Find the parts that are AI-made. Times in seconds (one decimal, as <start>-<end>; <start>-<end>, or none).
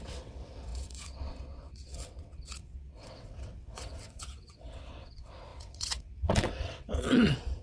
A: 0.0-7.6